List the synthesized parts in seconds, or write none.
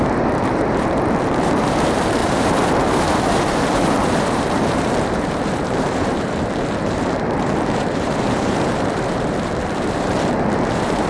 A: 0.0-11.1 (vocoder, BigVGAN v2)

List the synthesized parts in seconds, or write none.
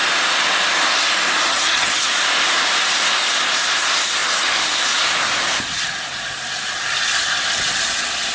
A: 1.5-2.1 (vocoder, HiFi-GAN)